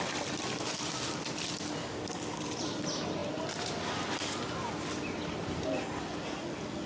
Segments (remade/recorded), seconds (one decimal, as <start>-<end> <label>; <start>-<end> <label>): 0.0-1.8 recorded; 1.8-2.4 remade; 2.4-6.9 recorded